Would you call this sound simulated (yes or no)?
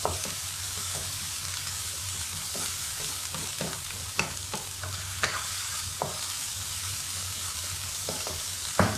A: yes